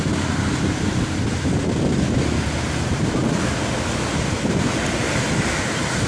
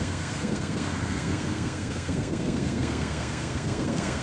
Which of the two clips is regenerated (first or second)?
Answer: second